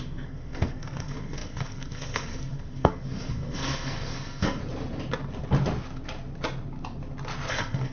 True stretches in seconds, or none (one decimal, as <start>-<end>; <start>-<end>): 4.6-7.5